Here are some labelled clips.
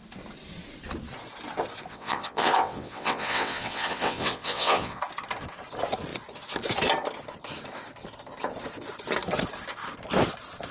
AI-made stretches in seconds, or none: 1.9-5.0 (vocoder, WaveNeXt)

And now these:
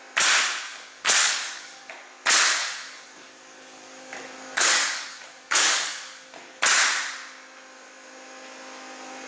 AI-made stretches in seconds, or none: 0.7-1.9 (codec, DAC); 2.6-6.6

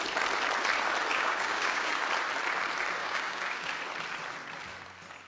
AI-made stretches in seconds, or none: 1.1-1.9 (codec, DAC); 3.0-3.7

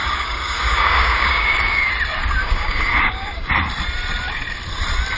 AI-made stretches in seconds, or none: 0.0-1.9 (codec, DAC); 2.4-3.5

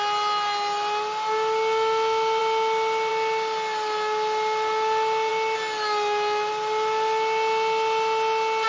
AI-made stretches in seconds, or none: none